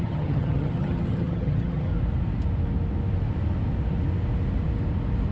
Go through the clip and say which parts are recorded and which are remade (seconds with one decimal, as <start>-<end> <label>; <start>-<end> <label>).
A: 0.0-1.9 remade; 1.9-5.3 recorded